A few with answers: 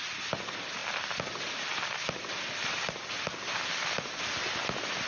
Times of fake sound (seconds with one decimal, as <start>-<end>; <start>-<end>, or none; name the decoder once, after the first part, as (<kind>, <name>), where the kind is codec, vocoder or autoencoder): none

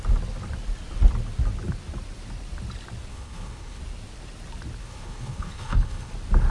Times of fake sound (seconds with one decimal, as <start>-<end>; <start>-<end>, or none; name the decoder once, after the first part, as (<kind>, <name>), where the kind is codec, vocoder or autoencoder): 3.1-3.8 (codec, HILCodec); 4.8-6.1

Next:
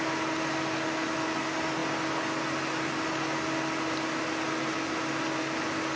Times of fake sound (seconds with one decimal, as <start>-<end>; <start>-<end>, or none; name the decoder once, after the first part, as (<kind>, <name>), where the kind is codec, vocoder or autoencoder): none

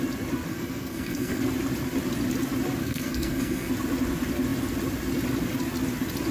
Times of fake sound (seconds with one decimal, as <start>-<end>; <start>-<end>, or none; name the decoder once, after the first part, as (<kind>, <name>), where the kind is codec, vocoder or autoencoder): 0.5-1.4 (codec, SNAC); 2.8-3.7

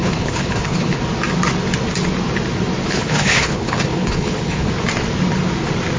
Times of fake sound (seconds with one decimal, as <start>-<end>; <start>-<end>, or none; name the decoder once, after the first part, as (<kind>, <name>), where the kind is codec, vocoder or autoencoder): 0.0-1.0 (codec, HILCodec); 2.8-4.7

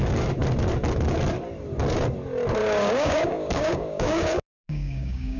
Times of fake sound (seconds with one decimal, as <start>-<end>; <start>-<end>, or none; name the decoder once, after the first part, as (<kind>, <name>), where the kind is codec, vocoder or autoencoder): 2.6-5.4 (codec, DAC)